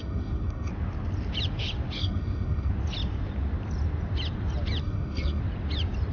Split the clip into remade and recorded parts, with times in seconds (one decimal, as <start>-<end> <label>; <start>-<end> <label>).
0.0-0.7 remade; 0.7-2.0 recorded; 2.0-2.7 remade; 2.7-4.8 recorded; 4.8-5.4 remade; 5.4-6.1 recorded